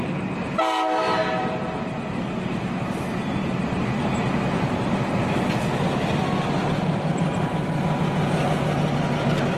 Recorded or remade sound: recorded